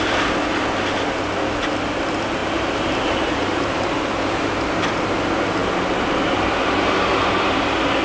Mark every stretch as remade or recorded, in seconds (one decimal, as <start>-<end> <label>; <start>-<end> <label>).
0.0-2.4 recorded; 2.4-4.2 remade; 4.2-8.0 recorded